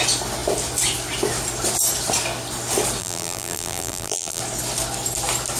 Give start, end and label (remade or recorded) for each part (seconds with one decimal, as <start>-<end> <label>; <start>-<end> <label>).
0.0-3.0 recorded; 3.0-4.4 remade; 4.4-5.6 recorded